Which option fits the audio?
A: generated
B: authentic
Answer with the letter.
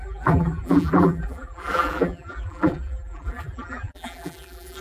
A